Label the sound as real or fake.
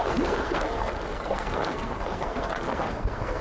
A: fake